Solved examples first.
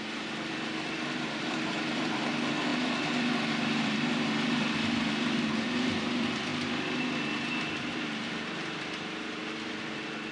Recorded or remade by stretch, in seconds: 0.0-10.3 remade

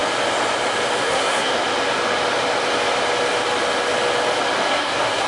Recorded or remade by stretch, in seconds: 0.0-1.0 recorded; 1.0-1.5 remade; 1.5-4.7 recorded; 4.7-5.3 remade